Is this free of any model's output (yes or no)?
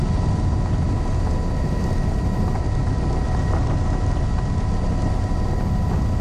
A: yes